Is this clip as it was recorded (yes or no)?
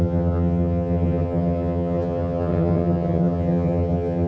no